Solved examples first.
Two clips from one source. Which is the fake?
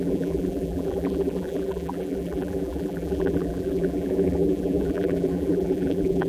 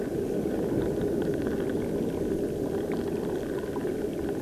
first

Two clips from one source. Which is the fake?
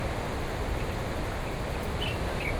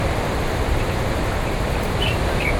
second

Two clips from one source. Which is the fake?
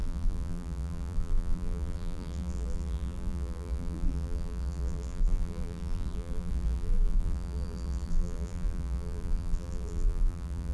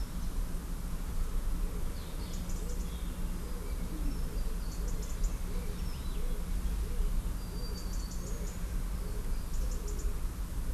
first